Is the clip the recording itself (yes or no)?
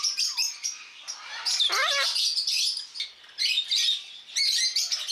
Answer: yes